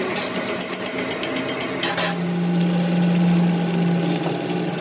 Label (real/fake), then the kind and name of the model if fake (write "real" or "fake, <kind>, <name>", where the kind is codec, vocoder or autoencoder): real